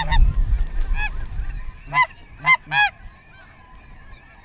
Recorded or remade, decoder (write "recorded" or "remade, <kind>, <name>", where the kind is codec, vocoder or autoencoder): recorded